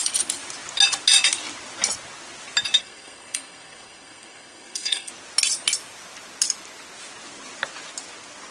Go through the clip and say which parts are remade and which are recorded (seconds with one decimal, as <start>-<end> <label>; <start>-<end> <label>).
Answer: 0.0-2.8 recorded; 2.8-5.1 remade; 5.1-8.5 recorded